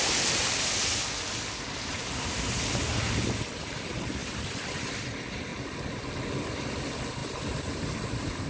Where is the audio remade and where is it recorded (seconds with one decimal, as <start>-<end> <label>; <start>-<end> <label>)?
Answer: 0.0-4.2 recorded; 4.2-4.7 remade; 4.7-7.2 recorded; 7.2-8.5 remade